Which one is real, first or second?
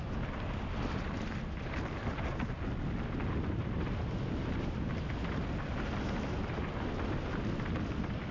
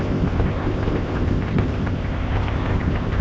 first